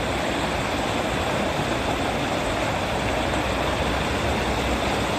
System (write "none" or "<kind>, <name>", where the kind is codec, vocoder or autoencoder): none